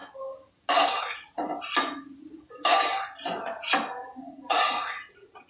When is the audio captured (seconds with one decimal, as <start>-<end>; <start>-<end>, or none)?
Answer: 0.0-1.0; 1.5-4.2

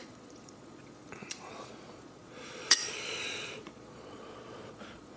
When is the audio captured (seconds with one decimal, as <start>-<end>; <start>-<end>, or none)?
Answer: none

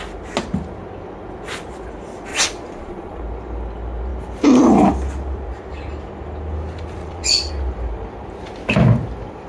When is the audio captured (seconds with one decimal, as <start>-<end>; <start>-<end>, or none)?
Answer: 0.0-2.3; 3.2-7.0; 7.5-9.5

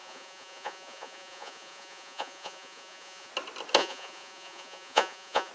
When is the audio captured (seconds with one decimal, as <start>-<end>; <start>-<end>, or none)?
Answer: 3.3-3.8

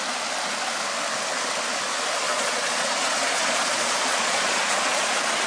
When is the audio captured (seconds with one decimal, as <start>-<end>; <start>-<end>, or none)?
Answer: 0.0-2.3; 5.1-5.5